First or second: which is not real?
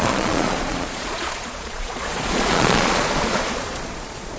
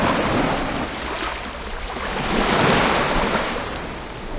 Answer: first